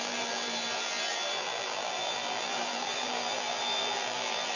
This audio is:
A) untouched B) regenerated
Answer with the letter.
B